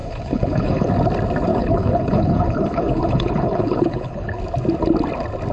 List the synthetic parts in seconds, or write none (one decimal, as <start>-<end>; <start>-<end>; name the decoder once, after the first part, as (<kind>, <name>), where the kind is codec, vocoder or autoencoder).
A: 0.0-0.9 (codec, HILCodec); 1.5-4.4